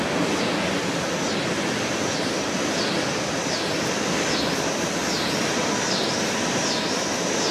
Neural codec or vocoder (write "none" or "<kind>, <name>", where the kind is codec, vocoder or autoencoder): none